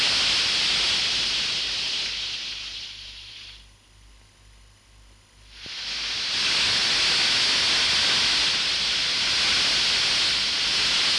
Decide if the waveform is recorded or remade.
recorded